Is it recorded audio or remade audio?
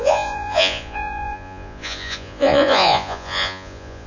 remade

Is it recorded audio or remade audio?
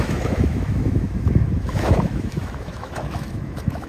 remade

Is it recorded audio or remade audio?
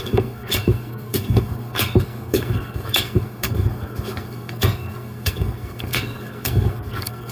remade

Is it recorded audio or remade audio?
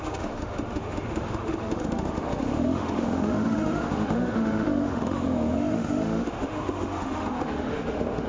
remade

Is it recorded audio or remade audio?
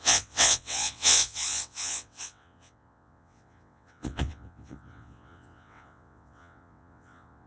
remade